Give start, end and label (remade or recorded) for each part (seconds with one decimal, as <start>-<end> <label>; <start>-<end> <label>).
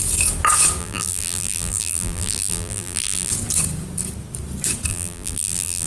0.0-0.8 recorded; 0.8-3.3 remade; 3.3-4.9 recorded; 4.9-5.9 remade